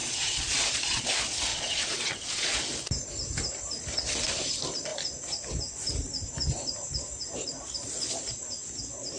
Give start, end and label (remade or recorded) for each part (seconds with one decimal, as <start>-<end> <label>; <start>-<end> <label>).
0.0-1.0 remade; 1.0-1.5 recorded; 1.5-2.6 remade; 2.6-9.2 recorded